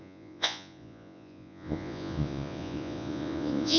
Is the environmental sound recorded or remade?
remade